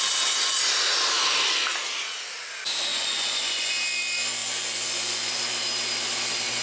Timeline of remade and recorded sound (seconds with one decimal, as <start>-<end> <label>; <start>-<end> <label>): 0.0-2.9 recorded; 2.9-3.7 remade; 3.7-4.4 recorded; 4.4-5.4 remade; 5.4-6.6 recorded